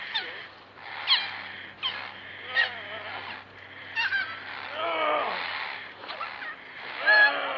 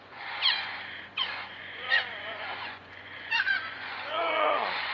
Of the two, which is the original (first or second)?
first